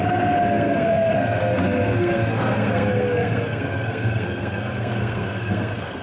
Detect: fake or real fake